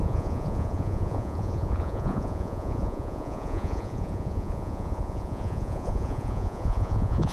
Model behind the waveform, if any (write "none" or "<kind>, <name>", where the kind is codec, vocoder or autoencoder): vocoder, Vocos